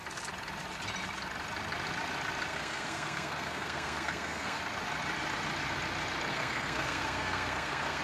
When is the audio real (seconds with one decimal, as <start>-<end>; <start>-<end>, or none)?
0.0-2.5; 4.6-6.3